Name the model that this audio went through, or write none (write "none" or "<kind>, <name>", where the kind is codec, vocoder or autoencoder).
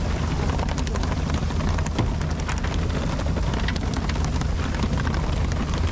none